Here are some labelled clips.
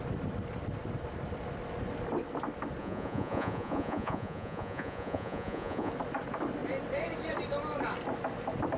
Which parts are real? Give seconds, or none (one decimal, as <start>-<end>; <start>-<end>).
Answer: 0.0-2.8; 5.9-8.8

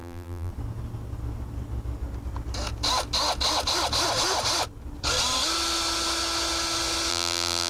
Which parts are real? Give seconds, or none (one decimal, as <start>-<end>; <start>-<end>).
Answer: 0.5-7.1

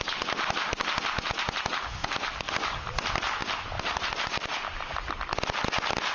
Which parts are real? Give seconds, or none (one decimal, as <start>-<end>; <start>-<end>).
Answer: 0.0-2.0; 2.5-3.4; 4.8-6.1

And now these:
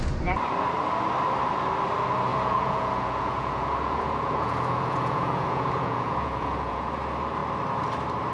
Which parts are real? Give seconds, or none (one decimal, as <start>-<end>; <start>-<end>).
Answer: 0.0-2.3; 6.9-8.3